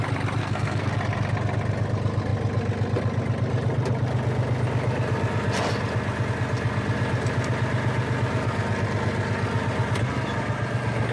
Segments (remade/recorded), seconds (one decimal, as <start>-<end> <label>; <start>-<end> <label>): 0.0-0.4 recorded; 0.4-0.9 remade; 0.9-11.1 recorded